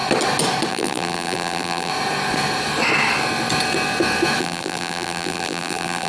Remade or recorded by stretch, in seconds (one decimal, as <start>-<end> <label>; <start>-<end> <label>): 0.0-0.7 recorded; 0.7-1.9 remade; 1.9-4.4 recorded; 4.4-6.1 remade